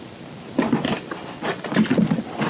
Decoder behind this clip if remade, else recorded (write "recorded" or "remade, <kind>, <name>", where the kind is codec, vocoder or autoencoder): recorded